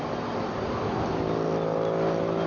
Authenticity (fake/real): real